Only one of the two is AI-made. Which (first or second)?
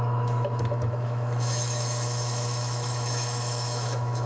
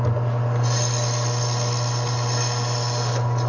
first